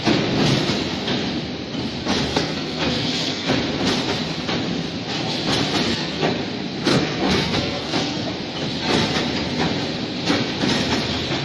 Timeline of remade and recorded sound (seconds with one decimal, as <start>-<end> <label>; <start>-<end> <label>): 0.0-2.3 recorded; 2.3-3.5 remade; 3.5-5.9 recorded; 5.9-6.4 remade; 6.4-6.9 recorded; 6.9-8.3 remade; 8.3-11.4 recorded